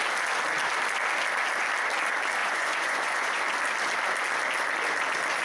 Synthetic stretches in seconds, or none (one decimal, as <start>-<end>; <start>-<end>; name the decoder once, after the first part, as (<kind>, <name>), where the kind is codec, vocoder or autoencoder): 2.4-3.4 (vocoder, Vocos)